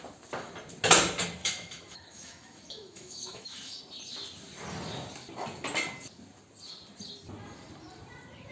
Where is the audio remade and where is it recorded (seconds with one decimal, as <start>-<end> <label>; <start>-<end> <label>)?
0.0-1.4 recorded; 1.4-3.8 remade; 3.8-8.5 recorded